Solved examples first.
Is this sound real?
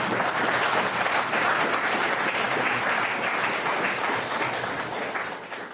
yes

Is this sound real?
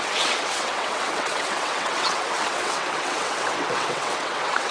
no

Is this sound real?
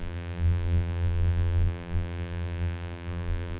no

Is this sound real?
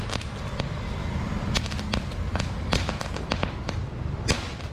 yes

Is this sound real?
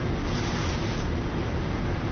no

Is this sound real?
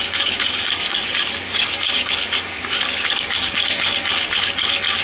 no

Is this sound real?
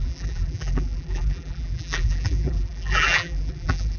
no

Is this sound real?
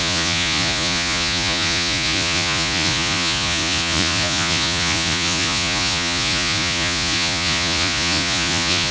no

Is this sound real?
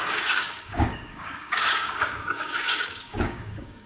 no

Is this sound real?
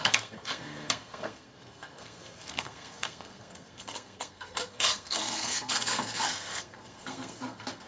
no